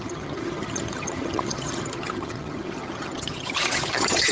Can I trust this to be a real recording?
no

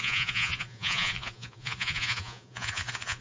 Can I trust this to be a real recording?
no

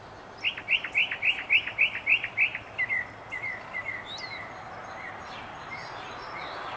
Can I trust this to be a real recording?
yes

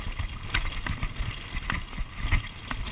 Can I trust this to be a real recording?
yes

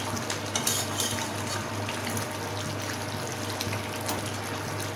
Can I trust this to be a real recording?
yes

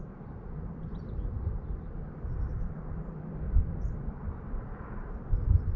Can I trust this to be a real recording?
no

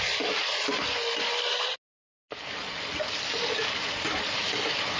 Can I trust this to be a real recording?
yes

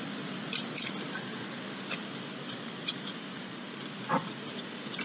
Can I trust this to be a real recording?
no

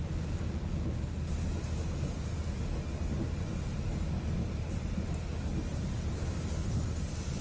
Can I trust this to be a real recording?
yes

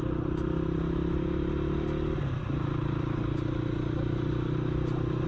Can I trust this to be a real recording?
yes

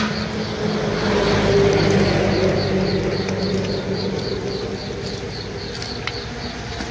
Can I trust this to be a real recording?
yes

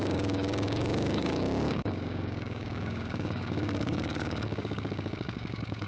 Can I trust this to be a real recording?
no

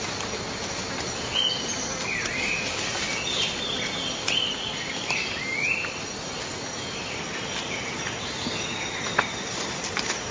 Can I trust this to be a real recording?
yes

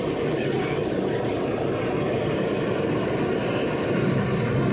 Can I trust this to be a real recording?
no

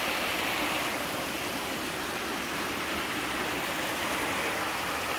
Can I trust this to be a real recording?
yes